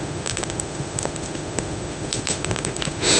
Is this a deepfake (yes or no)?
yes